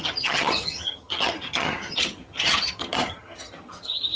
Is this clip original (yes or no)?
no